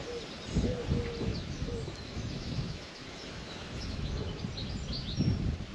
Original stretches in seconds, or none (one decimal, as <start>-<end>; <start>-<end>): 0.0-1.3; 4.4-5.7